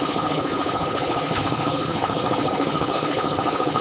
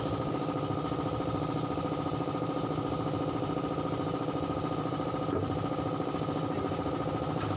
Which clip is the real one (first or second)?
second